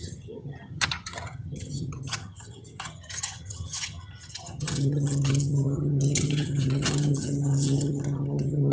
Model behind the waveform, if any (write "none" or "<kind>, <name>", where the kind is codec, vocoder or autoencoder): vocoder, HiFi-GAN